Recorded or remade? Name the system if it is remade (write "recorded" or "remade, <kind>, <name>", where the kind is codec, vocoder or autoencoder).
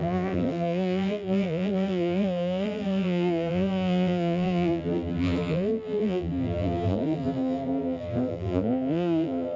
remade, vocoder, BigVGAN v2